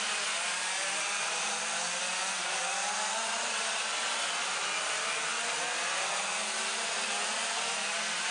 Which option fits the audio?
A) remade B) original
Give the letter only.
B